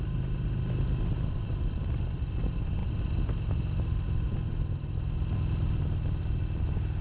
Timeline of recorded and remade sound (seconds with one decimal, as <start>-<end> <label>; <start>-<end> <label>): 0.0-7.0 recorded